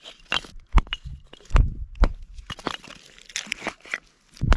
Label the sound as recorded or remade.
recorded